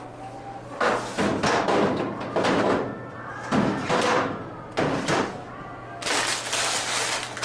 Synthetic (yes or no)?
no